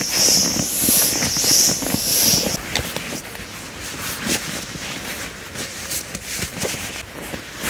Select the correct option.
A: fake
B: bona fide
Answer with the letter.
B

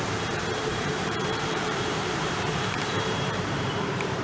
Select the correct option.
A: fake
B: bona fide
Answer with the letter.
A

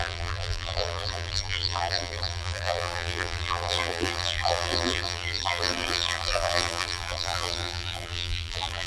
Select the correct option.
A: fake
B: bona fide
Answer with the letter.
A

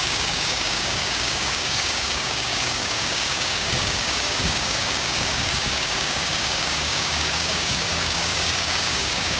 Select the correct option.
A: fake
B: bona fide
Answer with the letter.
A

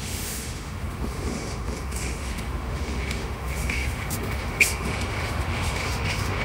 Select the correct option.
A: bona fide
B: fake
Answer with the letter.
B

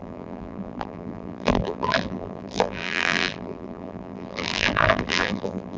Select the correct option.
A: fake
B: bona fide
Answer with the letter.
A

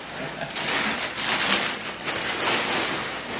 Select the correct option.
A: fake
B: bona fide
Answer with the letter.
B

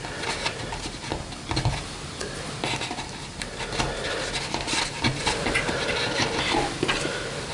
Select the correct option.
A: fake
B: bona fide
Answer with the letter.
B